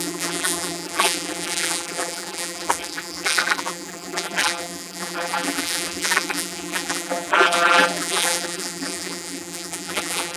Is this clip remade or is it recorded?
remade